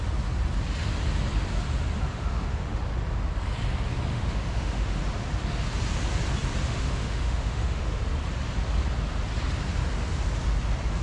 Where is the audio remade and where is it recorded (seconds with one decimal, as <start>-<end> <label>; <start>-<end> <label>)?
0.0-2.1 recorded; 2.1-2.8 remade; 2.8-4.1 recorded; 4.1-5.0 remade; 5.0-6.6 recorded; 6.6-8.0 remade; 8.0-11.0 recorded